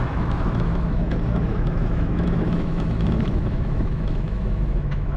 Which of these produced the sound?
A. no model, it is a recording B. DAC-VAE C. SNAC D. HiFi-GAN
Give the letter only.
B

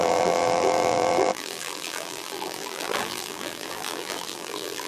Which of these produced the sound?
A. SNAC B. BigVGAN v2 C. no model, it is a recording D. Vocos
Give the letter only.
B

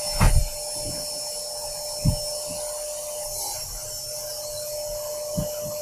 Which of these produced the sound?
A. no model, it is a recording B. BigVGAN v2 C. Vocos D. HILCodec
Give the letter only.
A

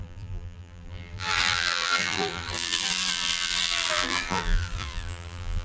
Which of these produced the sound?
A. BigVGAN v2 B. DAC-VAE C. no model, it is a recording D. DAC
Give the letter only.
A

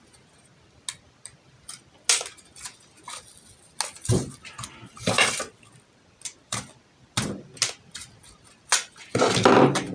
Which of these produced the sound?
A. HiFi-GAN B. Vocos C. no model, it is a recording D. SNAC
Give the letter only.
C